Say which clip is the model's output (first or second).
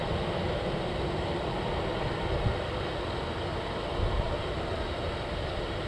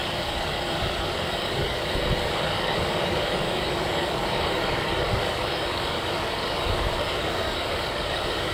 second